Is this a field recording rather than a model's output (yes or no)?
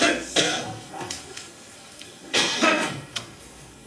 no